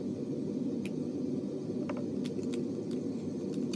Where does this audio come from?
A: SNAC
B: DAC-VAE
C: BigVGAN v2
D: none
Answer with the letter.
D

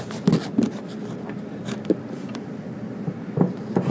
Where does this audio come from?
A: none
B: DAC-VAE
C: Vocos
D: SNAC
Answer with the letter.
A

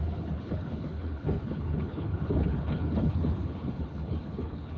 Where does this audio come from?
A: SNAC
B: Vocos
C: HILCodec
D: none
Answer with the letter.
C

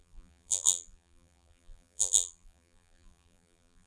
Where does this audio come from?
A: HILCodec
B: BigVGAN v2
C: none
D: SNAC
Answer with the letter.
B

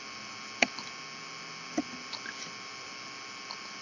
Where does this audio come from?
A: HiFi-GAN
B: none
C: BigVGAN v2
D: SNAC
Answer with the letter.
B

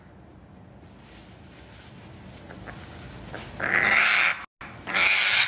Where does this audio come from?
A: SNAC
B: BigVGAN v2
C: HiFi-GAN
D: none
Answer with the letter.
D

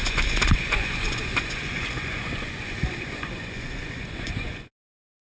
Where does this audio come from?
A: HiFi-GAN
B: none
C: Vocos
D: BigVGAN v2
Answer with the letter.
C